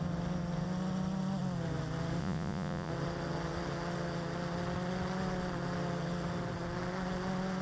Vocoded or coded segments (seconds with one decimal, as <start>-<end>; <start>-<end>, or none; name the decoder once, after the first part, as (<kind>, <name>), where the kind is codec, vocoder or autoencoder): 2.2-2.9 (vocoder, Vocos)